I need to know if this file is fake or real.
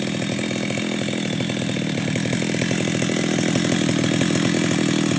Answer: real